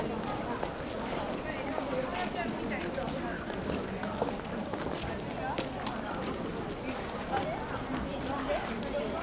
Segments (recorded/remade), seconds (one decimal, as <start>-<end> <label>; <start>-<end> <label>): 0.0-9.2 recorded